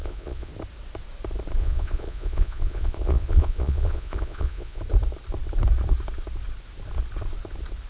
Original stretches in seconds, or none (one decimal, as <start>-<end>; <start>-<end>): 0.5-1.6; 4.8-7.9